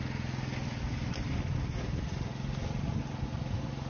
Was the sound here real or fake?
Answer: real